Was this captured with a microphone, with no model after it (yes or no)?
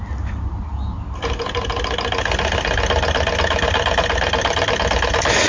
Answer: yes